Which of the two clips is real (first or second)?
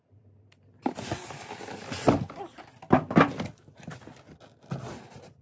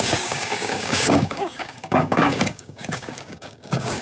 first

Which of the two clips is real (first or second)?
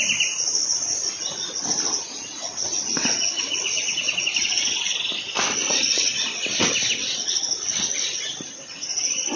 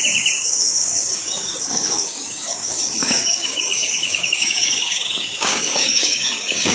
first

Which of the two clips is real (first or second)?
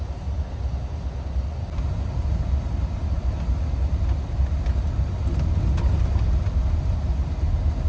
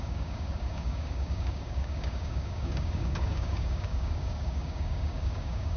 first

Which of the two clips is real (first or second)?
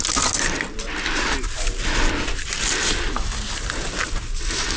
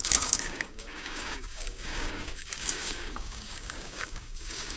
first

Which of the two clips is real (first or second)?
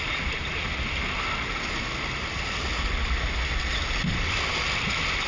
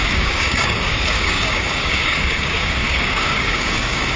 first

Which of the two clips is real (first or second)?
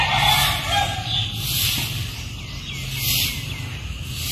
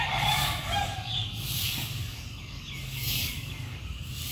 first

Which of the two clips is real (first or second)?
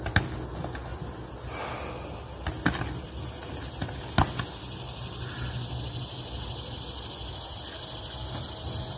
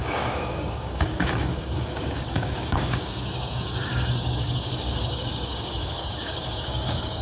first